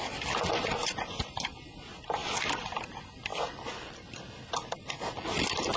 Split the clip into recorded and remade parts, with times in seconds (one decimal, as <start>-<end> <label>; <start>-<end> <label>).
0.0-0.8 recorded; 0.8-1.5 remade; 1.5-5.8 recorded